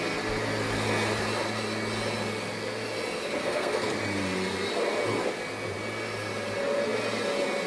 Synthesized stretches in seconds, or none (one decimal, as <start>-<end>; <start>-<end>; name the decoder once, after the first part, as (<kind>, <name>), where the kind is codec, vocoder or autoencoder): 3.4-3.9 (codec, SNAC)